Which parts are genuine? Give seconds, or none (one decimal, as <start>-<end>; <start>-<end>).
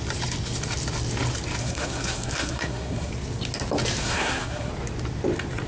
0.0-1.6; 3.1-4.0; 4.7-5.7